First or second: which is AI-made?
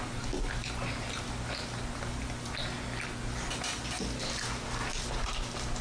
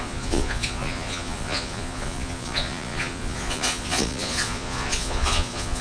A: second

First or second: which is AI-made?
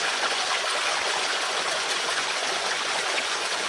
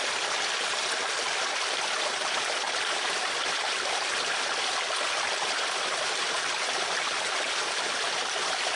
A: first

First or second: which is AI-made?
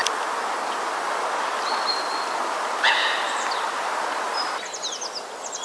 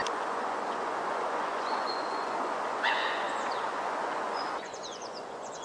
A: second